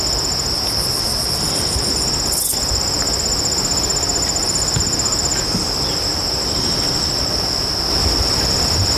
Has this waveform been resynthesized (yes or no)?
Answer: no